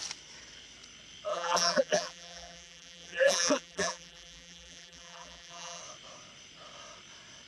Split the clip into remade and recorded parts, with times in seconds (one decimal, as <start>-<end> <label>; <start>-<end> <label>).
0.0-1.3 recorded; 1.3-5.8 remade; 5.8-7.5 recorded